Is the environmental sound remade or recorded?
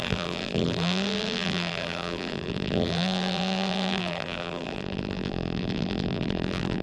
remade